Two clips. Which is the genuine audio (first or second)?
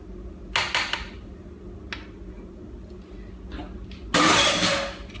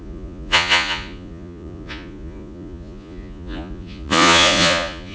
first